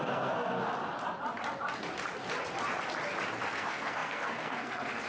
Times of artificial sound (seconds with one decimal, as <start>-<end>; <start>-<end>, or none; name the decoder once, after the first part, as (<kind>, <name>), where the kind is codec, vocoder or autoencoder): 0.0-0.6 (codec, SNAC); 3.4-5.1